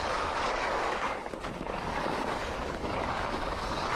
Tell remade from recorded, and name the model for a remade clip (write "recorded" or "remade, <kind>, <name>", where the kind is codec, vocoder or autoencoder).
remade, codec, DAC